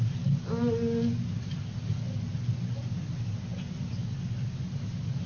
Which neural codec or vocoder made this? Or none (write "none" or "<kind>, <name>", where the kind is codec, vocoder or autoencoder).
none